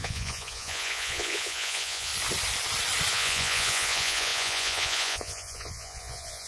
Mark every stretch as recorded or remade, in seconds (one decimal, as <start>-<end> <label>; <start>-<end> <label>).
0.0-2.1 remade; 2.1-3.1 recorded; 3.1-6.5 remade